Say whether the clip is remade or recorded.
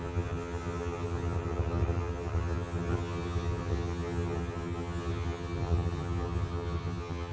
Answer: remade